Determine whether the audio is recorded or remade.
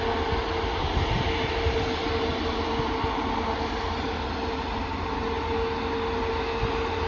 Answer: recorded